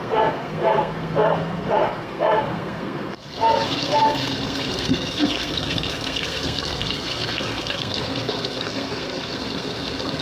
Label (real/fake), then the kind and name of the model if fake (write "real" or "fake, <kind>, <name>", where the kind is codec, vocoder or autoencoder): fake, codec, SNAC